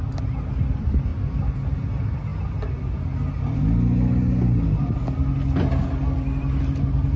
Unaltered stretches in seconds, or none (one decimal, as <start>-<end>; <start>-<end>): 0.0-7.2